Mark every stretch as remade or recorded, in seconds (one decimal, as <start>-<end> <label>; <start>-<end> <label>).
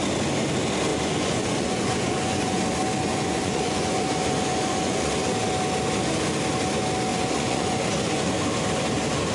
0.0-0.9 recorded; 0.9-2.6 remade; 2.6-3.0 recorded; 3.0-5.1 remade; 5.1-7.1 recorded; 7.1-8.3 remade; 8.3-9.3 recorded